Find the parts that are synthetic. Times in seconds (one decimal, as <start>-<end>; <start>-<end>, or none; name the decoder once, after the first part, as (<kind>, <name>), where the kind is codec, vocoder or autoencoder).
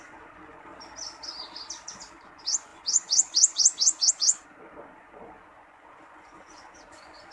0.0-0.7 (vocoder, Vocos); 2.2-7.3